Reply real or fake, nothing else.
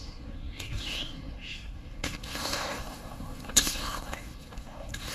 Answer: fake